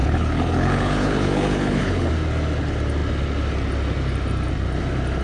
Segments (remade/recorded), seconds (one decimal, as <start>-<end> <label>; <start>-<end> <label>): 0.0-2.1 remade; 2.1-5.2 recorded